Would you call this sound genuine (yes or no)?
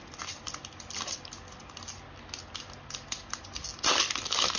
yes